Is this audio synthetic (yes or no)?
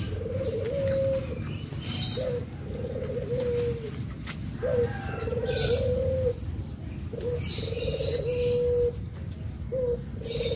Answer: no